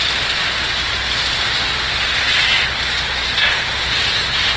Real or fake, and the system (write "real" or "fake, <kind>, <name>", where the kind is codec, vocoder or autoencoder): real